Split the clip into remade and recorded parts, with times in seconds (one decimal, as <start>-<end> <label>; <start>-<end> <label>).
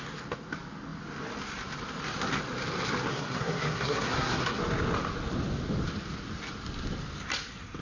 0.0-3.1 recorded; 3.1-4.6 remade; 4.6-7.8 recorded